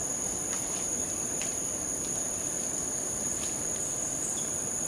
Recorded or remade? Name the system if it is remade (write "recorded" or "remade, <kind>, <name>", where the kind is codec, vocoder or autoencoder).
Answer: remade, vocoder, BigVGAN v2